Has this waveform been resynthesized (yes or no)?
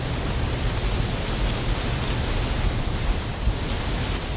no